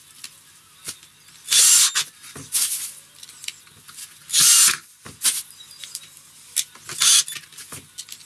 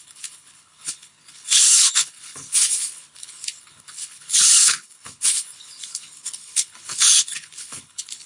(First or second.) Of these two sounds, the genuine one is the first